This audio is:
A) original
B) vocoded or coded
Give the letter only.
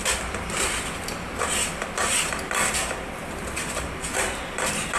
B